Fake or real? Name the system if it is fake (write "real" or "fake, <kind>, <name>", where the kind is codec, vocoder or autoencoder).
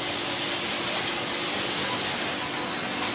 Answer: real